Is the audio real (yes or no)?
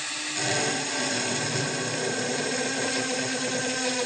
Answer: yes